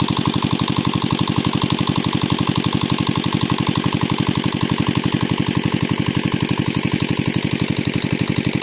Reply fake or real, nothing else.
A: real